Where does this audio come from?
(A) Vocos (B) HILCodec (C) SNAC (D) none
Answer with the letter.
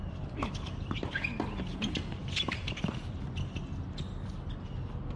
D